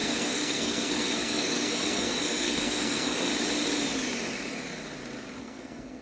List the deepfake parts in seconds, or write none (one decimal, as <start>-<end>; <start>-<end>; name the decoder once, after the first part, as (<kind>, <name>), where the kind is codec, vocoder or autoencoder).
0.0-3.3 (codec, SNAC); 5.4-6.0